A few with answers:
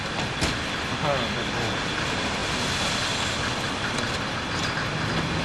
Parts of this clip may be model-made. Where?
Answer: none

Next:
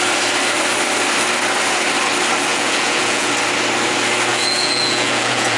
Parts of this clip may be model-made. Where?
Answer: 2.5-3.3 (vocoder, Vocos); 4.3-5.6

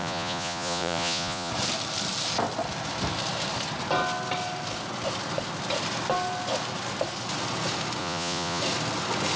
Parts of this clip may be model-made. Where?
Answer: 0.0-1.5 (vocoder, Vocos); 8.0-8.6

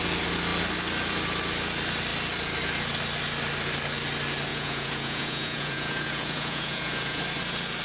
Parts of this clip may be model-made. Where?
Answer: 4.5-7.2 (vocoder, Vocos)

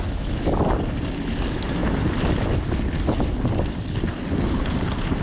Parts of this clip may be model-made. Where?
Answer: none

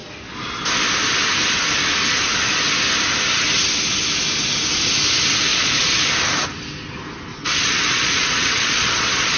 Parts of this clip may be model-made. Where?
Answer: 5.5-6.0 (vocoder, Vocos); 7.3-9.4